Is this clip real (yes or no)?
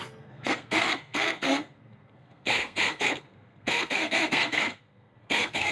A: no